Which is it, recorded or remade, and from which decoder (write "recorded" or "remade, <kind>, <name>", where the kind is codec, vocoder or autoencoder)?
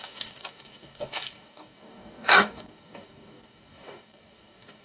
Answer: remade, codec, DAC